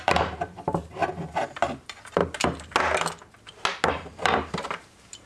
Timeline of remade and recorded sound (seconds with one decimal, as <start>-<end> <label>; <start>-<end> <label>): 0.0-2.2 remade; 2.2-3.9 recorded; 3.9-5.3 remade